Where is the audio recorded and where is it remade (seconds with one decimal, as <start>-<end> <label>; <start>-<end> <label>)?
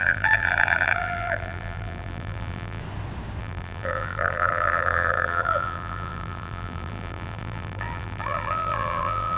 0.0-2.8 remade; 2.8-3.4 recorded; 3.4-9.4 remade